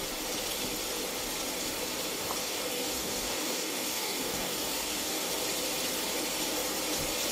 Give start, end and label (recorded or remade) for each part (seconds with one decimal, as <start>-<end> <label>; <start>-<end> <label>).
0.0-2.4 recorded; 2.4-5.3 remade; 5.3-7.3 recorded